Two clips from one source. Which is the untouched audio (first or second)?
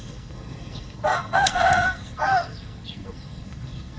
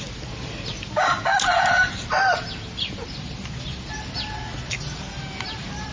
second